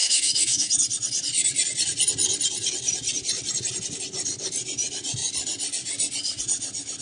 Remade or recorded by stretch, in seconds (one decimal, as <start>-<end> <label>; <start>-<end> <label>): 0.0-0.7 remade; 0.7-7.0 recorded